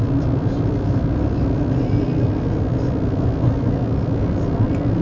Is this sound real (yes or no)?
yes